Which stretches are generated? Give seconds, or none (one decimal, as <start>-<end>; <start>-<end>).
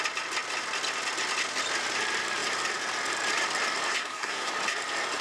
3.9-4.5